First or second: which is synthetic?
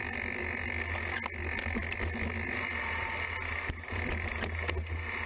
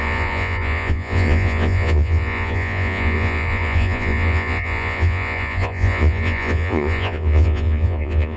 second